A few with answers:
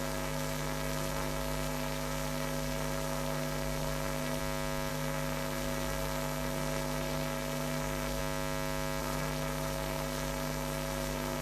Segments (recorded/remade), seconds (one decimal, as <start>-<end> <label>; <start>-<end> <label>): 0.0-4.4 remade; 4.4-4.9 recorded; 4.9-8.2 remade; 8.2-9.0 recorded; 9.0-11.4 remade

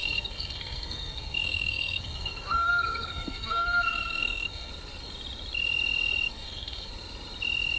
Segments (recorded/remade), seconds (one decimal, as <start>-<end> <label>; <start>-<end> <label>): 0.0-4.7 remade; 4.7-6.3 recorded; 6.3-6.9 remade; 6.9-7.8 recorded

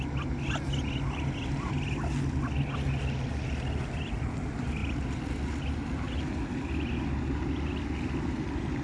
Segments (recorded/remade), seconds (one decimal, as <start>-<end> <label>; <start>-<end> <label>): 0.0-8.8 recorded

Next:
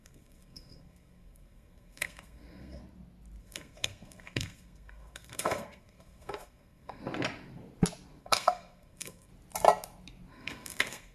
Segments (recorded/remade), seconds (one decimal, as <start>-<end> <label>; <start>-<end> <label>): 0.0-2.8 remade; 2.8-3.4 recorded; 3.4-7.0 remade; 7.0-8.2 recorded; 8.2-9.3 remade; 9.3-10.3 recorded; 10.3-11.1 remade